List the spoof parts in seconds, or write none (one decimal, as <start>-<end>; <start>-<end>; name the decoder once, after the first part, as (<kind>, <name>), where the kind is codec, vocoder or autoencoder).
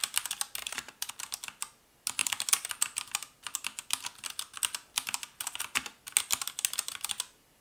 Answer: 0.6-1.1 (vocoder, BigVGAN v2); 2.2-2.8